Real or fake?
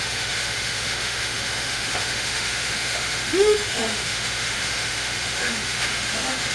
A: fake